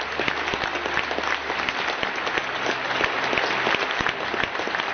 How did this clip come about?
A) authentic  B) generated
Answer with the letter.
A